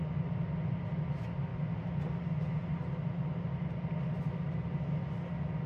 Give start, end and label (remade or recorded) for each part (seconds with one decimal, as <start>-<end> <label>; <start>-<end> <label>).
0.0-5.7 recorded